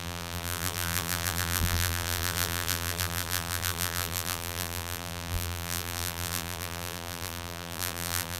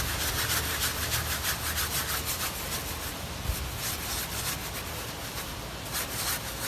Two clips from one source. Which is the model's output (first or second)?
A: first